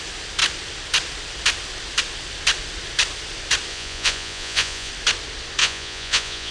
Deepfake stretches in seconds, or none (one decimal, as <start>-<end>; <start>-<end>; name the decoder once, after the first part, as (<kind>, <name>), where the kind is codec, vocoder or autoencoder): 3.7-4.9 (vocoder, Vocos); 5.6-6.5